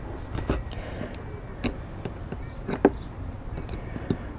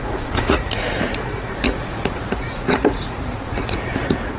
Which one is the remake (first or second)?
second